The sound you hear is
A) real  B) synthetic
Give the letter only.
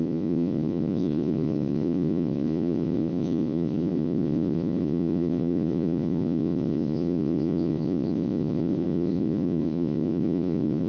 B